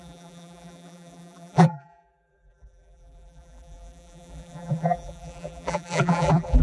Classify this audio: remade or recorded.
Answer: remade